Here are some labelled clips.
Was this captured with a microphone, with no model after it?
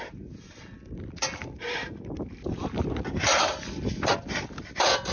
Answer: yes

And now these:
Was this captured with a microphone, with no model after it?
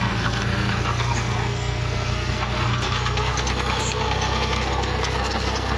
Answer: no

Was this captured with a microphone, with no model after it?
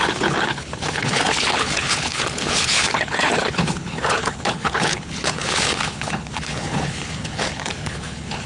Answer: no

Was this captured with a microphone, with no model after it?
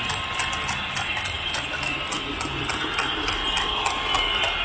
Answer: yes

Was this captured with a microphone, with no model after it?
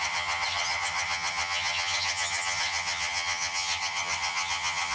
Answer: no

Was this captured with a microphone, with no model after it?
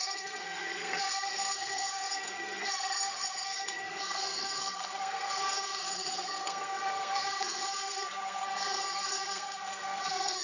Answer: no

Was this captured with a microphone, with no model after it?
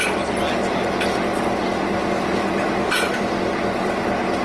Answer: yes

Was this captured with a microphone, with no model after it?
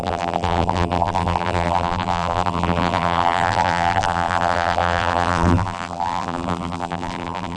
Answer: no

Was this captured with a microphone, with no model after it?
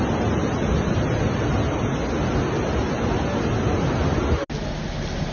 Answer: yes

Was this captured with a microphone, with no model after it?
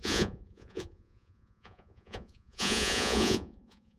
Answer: no